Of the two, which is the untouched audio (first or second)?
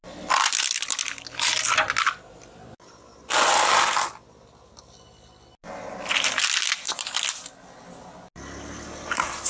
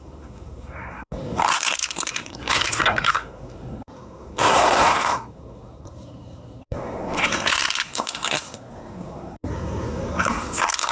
first